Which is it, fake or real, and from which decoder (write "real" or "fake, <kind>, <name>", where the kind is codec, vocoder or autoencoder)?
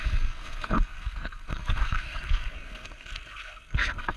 fake, codec, SNAC